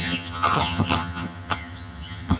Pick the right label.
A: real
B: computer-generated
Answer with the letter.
B